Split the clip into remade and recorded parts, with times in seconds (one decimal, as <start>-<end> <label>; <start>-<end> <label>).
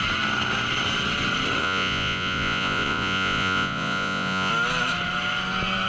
0.0-1.6 recorded; 1.6-4.5 remade; 4.5-5.9 recorded